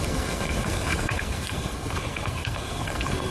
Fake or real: fake